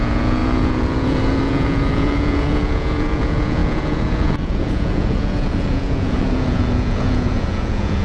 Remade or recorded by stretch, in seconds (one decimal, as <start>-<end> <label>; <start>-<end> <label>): 0.0-8.0 remade